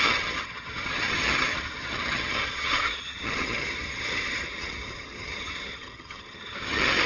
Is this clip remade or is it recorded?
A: remade